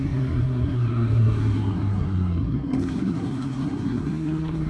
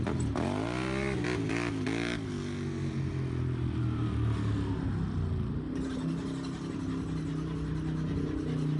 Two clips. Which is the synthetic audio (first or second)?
first